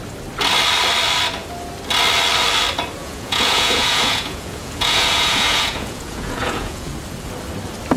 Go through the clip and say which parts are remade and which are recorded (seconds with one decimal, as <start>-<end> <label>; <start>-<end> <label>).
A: 0.0-3.0 recorded; 3.0-6.9 remade; 6.9-8.0 recorded